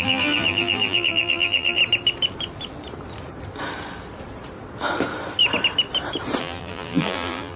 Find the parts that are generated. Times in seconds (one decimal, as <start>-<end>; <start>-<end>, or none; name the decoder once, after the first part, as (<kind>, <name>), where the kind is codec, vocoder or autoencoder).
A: 0.0-1.8 (vocoder, BigVGAN v2); 6.4-7.6